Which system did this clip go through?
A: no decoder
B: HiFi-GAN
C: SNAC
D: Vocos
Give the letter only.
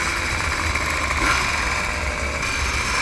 A